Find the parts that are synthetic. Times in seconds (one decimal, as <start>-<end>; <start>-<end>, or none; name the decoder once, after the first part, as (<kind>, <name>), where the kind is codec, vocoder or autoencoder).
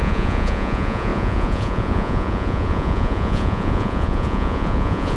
0.0-5.2 (vocoder, Vocos)